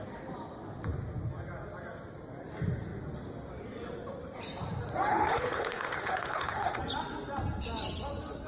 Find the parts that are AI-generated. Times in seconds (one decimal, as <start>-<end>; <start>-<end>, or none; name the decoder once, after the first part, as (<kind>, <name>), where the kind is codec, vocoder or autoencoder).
5.1-6.8 (codec, HILCodec)

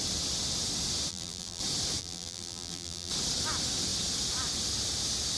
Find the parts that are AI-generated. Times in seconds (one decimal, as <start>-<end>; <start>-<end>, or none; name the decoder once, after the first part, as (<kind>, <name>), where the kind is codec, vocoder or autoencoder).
1.1-1.6 (vocoder, BigVGAN v2); 2.0-3.1

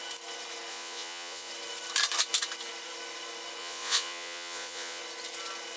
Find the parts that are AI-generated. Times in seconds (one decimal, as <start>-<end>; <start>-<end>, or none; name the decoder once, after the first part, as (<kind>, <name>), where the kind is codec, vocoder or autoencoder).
0.7-1.5 (vocoder, Vocos); 3.6-5.0

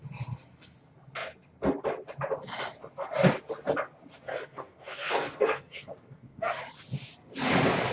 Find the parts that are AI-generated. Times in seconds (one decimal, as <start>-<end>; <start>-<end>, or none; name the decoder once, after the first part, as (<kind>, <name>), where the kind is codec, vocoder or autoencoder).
4.3-6.6 (codec, SNAC)